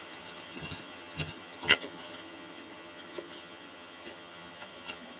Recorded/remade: remade